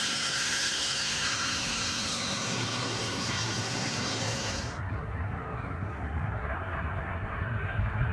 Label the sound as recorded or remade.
remade